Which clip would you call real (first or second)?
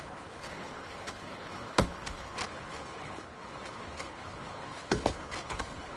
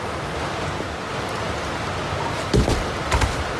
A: second